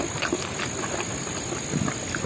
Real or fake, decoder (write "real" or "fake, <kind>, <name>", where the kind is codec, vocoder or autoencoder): real